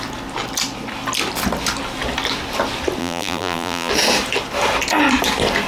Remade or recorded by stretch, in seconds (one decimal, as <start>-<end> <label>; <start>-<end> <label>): 0.0-3.0 recorded; 3.0-3.9 remade; 3.9-5.7 recorded